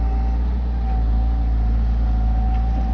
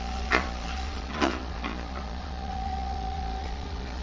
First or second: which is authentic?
first